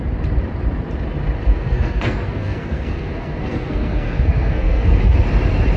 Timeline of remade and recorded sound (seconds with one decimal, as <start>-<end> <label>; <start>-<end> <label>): 0.0-1.5 recorded; 1.5-5.0 remade; 5.0-5.8 recorded